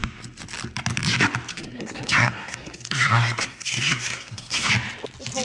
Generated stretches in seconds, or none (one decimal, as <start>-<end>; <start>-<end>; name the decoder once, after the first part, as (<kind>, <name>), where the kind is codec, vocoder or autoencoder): 1.5-4.7 (codec, SNAC)